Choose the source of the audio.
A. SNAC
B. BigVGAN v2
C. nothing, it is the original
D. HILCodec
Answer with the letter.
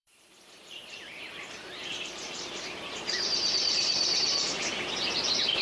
B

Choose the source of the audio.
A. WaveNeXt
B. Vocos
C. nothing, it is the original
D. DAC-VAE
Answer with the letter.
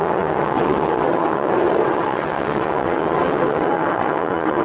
A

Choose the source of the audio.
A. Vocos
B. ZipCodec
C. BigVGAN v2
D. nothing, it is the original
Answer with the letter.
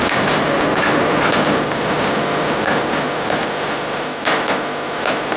D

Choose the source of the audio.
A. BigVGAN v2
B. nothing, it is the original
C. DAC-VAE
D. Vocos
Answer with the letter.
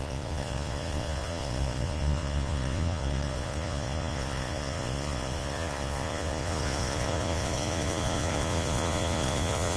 D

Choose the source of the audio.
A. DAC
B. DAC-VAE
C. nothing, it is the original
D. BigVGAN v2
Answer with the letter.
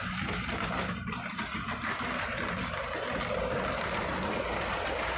D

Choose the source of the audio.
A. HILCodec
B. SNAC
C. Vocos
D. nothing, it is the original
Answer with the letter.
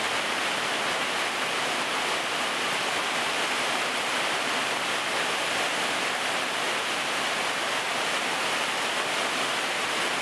D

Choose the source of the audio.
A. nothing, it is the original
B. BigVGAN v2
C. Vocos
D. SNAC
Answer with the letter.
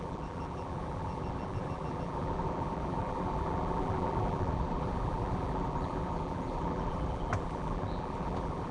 B